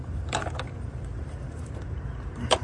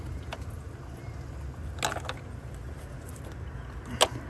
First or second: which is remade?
first